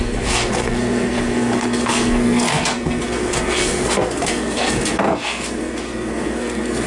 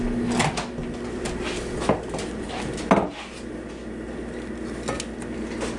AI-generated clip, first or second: first